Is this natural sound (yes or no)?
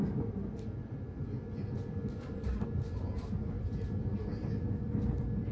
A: yes